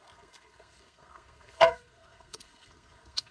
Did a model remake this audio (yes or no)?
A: yes